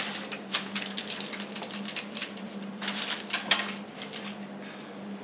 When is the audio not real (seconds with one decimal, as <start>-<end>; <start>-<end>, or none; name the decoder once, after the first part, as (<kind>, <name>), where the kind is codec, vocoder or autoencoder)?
2.2-2.7 (vocoder, BigVGAN v2)